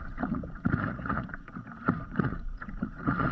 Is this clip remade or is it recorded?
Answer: remade